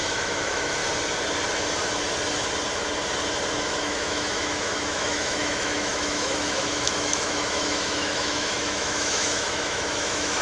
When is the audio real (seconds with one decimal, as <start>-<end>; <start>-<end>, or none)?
0.8-3.6